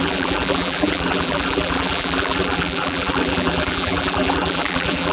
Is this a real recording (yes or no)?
no